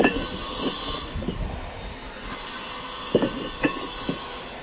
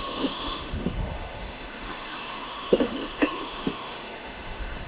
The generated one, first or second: second